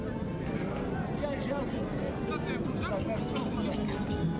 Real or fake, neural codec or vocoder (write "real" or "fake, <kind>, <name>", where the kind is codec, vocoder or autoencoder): real